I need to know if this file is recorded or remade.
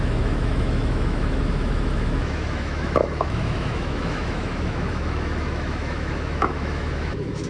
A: remade